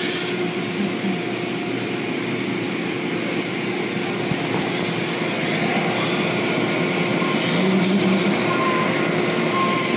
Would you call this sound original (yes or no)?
yes